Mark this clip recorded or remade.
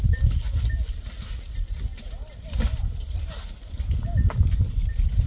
recorded